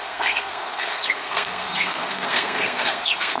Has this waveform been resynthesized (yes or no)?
yes